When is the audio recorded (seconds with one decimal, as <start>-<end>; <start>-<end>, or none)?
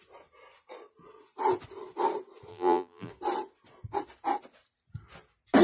0.0-2.5; 3.1-5.6